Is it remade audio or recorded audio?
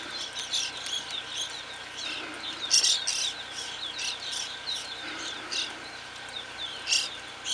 recorded